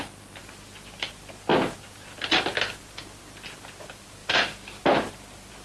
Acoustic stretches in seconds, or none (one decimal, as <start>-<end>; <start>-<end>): 0.0-0.4; 1.1-4.2; 4.8-5.6